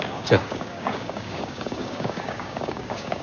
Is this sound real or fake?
fake